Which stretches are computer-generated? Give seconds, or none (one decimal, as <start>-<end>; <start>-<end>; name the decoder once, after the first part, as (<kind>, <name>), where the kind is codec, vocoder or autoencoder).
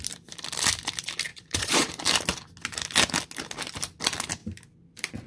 1.3-1.9 (vocoder, Vocos)